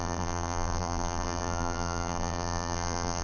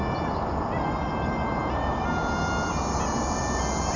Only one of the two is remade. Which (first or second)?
first